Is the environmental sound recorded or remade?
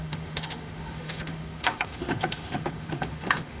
remade